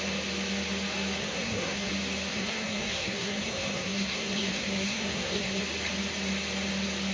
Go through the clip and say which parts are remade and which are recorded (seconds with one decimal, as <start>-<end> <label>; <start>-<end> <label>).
0.0-1.2 recorded; 1.2-1.9 remade; 1.9-2.3 recorded; 2.3-5.6 remade; 5.6-7.1 recorded